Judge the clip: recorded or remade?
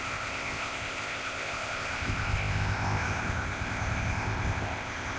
remade